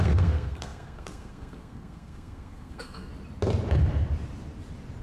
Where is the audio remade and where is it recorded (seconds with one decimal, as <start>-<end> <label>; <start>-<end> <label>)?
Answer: 0.0-3.1 remade; 3.1-5.0 recorded